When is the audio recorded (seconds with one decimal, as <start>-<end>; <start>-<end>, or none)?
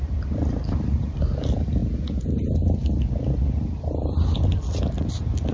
0.0-5.5